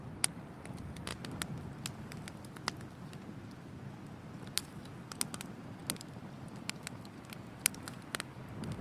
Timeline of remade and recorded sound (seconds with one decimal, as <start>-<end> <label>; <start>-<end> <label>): 0.0-8.8 recorded